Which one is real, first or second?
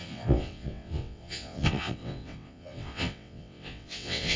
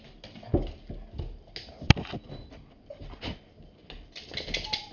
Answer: second